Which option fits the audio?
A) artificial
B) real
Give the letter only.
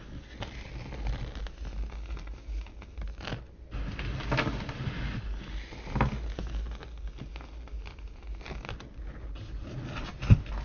B